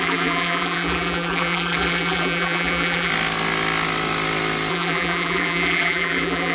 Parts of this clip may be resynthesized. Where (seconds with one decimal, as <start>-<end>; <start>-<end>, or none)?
0.0-3.1; 4.7-6.5